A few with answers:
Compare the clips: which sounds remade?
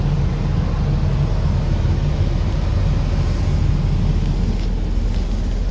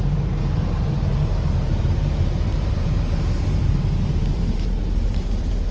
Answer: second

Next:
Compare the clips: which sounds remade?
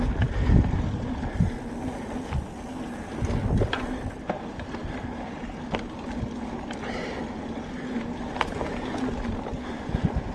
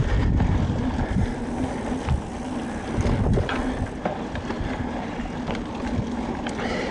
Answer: second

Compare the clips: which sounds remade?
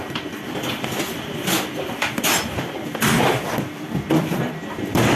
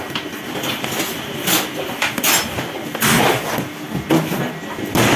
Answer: first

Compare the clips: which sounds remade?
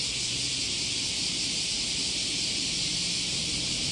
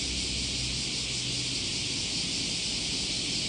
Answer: first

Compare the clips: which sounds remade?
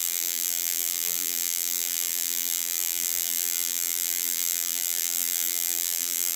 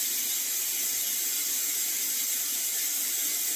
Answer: first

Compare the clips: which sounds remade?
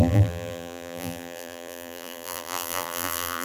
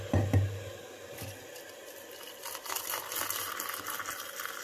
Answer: first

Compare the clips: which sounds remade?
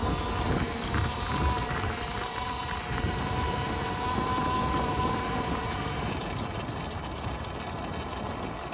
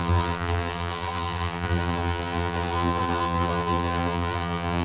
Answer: second